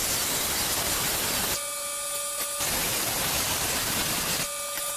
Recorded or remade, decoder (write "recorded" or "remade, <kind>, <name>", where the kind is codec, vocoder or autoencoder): recorded